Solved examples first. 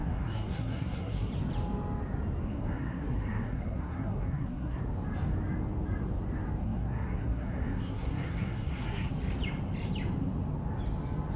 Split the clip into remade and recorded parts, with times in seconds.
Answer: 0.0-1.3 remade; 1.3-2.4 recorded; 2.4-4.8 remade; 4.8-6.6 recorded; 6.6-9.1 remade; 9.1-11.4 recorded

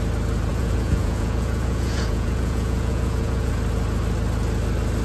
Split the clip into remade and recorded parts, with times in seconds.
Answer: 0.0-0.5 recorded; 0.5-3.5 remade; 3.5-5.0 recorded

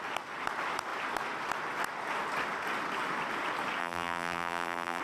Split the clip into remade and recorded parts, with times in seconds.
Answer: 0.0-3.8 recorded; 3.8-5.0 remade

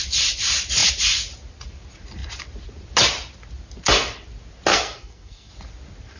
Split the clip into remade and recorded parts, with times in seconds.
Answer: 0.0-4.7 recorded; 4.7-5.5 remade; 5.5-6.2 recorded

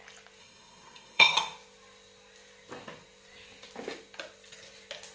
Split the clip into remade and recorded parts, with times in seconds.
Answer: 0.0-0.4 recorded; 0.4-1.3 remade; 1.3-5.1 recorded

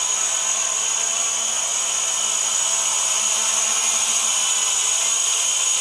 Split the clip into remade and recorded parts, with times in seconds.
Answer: 0.0-5.8 recorded